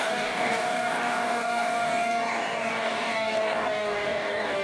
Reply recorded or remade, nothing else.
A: remade